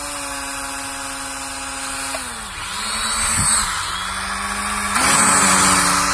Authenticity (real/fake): real